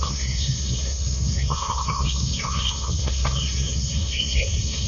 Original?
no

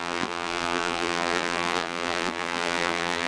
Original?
no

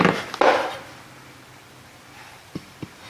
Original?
yes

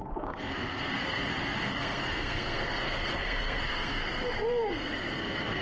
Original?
no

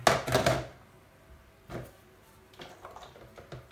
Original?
yes